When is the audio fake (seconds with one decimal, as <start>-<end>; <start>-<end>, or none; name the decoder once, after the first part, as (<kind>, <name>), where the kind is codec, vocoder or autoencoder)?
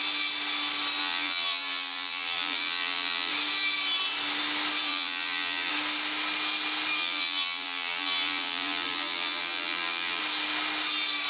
1.0-3.3 (vocoder, BigVGAN v2); 4.9-5.7; 7.0-10.2